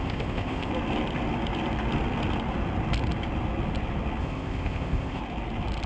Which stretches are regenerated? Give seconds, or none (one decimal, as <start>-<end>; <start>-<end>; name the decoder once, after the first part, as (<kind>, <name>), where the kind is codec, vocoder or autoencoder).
0.0-0.7 (codec, ZipCodec); 4.2-5.2

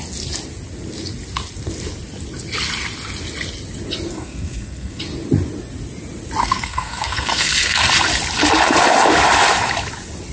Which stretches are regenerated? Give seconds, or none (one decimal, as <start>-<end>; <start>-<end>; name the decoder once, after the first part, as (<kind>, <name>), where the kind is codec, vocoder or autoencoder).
4.1-5.0 (codec, SNAC); 6.4-7.9

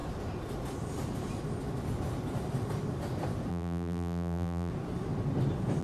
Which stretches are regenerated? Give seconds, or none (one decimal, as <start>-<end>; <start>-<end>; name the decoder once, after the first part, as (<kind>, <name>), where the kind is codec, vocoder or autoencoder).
3.5-4.7 (vocoder, BigVGAN v2)